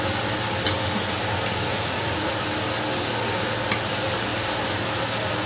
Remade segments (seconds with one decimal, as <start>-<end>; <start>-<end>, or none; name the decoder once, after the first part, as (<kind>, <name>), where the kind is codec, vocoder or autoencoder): 1.7-2.4 (vocoder, Vocos)